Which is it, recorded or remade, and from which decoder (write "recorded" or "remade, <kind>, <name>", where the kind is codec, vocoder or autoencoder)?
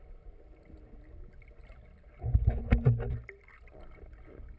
recorded